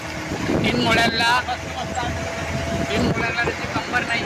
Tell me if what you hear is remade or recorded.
recorded